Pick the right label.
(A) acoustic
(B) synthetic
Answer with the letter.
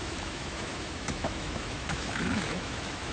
B